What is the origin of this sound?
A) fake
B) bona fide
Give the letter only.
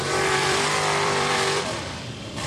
A